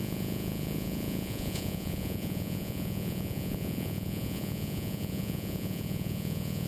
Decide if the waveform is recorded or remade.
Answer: remade